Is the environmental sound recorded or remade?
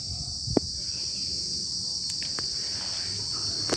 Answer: recorded